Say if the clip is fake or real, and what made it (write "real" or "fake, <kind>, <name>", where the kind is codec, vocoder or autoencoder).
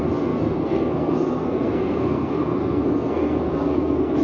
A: fake, codec, SNAC